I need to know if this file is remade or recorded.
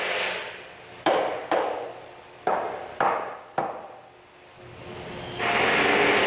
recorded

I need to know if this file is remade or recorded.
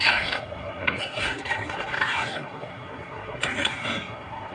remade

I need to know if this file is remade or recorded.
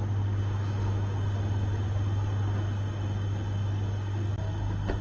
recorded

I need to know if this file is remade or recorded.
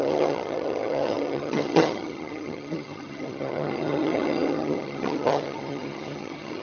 remade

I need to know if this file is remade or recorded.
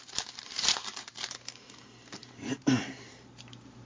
remade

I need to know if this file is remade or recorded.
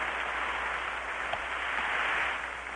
recorded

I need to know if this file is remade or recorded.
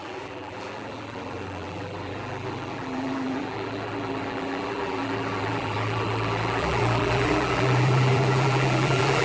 remade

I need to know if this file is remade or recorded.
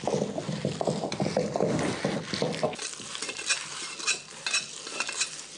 recorded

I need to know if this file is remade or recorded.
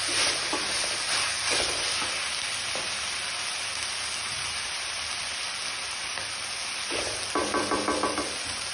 recorded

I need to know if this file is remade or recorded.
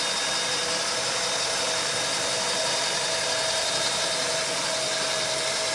recorded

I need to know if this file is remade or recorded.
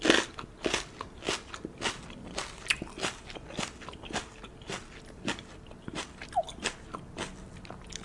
recorded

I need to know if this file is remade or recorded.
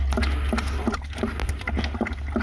recorded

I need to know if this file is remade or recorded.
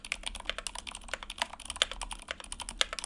recorded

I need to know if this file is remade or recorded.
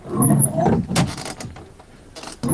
recorded